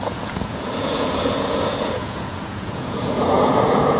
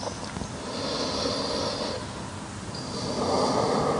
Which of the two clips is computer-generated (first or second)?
first